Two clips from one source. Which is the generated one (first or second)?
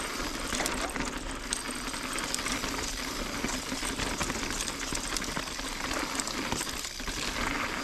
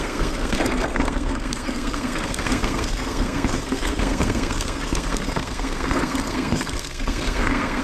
second